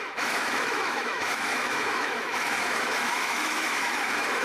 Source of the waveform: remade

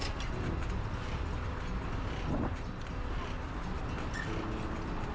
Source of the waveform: recorded